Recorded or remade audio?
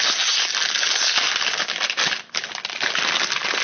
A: recorded